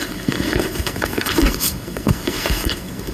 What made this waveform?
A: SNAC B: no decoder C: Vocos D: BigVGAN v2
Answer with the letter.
A